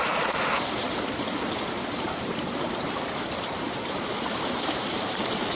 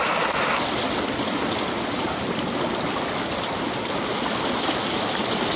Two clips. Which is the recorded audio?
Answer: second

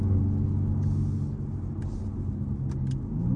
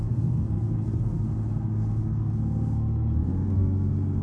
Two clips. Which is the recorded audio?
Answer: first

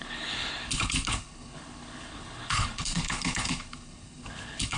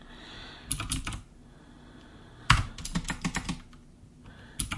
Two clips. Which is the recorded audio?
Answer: second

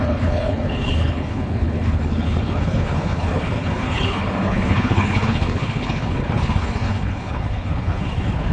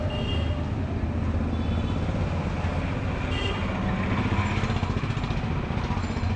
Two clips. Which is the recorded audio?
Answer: second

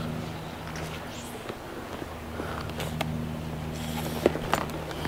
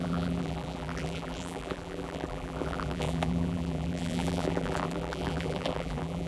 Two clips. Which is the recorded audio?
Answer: first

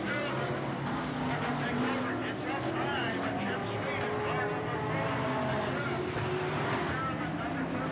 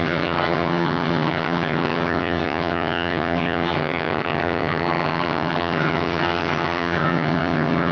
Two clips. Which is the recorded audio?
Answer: first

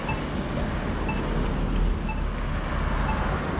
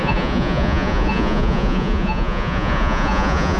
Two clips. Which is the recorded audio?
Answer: first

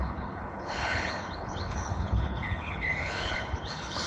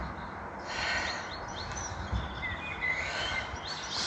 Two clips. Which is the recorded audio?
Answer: second